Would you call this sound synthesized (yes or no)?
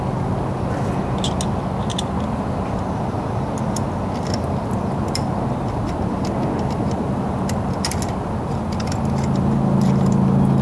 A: no